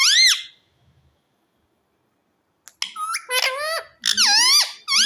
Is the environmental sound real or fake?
real